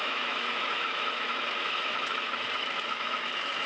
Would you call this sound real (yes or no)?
no